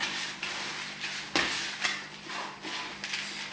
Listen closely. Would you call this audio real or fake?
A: real